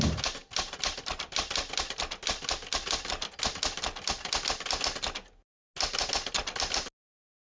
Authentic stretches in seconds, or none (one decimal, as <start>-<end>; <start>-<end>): 0.0-7.5